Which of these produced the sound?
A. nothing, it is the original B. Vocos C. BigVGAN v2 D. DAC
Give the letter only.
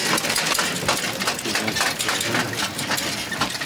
A